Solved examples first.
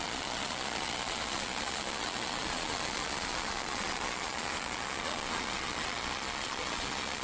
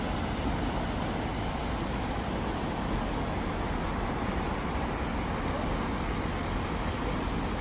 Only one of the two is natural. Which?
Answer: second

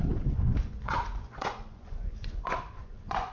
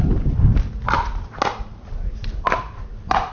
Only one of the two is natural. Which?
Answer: second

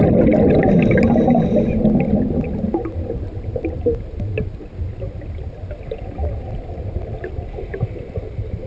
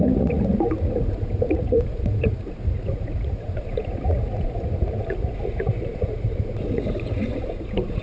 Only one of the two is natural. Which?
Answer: first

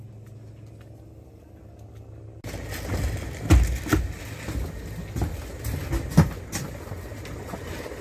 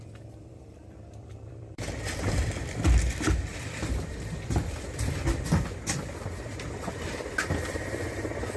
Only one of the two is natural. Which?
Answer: first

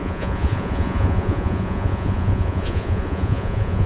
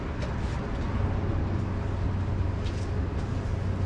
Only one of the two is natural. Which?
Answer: second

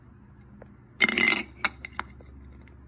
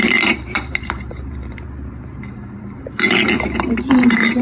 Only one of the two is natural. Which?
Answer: first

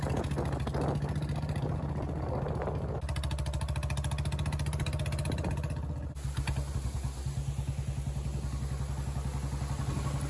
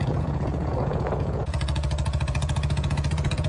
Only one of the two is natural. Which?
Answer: first